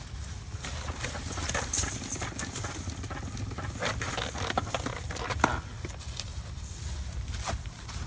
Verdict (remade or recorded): recorded